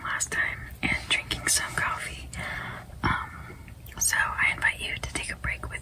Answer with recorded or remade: recorded